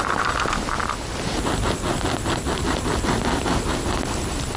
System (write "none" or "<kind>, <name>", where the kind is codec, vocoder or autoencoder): none